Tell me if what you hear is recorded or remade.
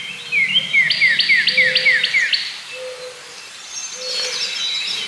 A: recorded